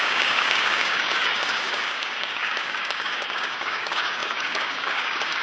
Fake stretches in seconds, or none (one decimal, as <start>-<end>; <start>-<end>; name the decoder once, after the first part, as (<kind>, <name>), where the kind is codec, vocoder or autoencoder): 0.0-5.4 (codec, DAC)